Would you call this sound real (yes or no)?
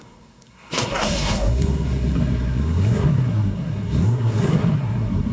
no